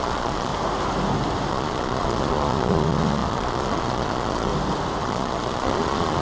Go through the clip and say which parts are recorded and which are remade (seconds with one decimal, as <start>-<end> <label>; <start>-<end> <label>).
0.0-0.5 remade; 0.5-1.5 recorded; 1.5-4.5 remade; 4.5-5.0 recorded; 5.0-6.2 remade